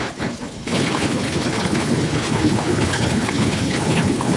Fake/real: fake